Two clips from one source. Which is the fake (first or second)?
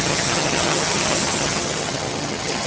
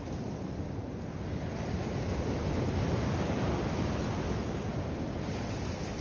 first